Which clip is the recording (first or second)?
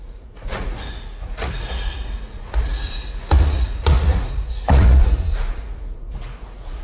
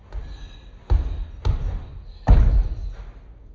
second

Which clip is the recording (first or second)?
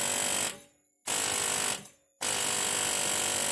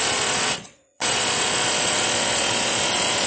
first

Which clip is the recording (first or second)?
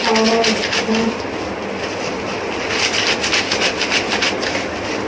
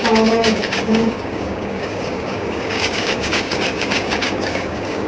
first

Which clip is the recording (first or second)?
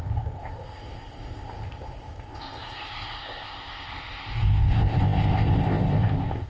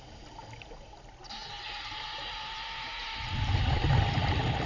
second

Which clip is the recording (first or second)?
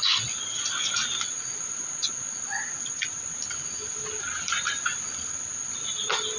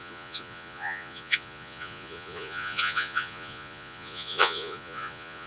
first